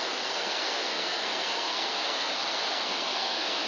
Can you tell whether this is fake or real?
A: fake